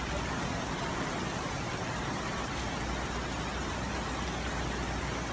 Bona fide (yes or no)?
yes